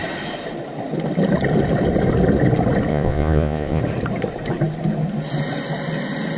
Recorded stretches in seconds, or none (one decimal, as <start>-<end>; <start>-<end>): 0.0-2.9; 3.8-6.4